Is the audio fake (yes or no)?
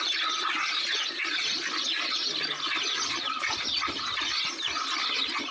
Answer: no